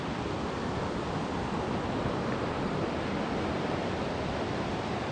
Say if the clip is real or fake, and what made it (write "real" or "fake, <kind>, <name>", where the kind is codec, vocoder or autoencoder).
real